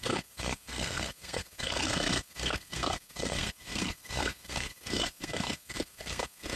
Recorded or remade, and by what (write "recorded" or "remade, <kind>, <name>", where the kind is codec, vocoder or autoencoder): remade, codec, SNAC